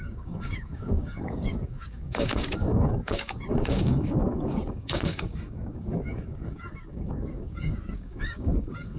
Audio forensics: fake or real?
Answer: fake